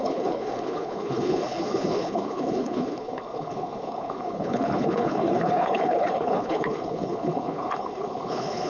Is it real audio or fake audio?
fake